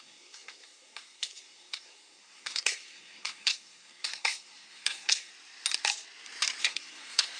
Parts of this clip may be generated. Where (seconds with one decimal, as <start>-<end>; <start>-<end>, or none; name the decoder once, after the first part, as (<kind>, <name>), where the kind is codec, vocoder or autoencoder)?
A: 0.0-5.3 (codec, SNAC); 6.6-7.4